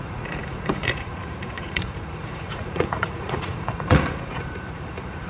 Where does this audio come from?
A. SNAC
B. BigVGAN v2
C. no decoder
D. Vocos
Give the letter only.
D